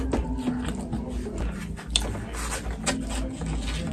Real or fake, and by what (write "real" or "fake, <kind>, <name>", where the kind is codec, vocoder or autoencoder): real